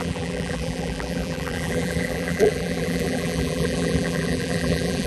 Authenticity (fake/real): fake